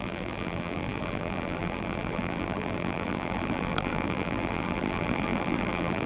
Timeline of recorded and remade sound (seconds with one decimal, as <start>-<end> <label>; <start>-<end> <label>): 0.0-6.1 remade